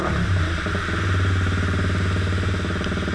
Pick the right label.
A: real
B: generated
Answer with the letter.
A